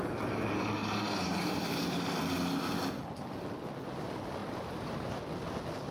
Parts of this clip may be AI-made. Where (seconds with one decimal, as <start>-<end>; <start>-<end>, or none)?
0.8-2.2; 4.4-5.1